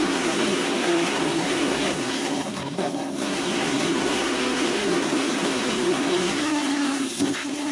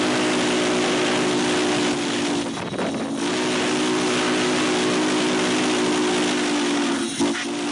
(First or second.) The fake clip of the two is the first